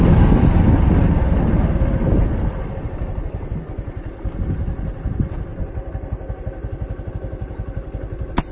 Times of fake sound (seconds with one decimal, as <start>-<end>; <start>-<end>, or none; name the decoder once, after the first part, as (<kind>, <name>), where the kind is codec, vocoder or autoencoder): none